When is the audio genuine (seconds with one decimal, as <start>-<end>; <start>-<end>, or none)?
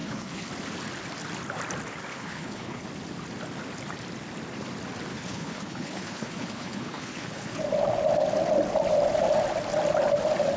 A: 0.5-2.1; 2.9-5.1; 7.6-10.6